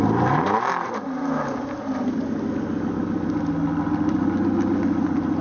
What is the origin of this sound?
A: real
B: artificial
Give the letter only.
A